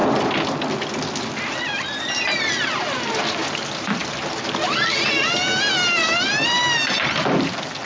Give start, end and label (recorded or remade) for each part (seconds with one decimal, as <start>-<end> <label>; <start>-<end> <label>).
0.0-7.9 recorded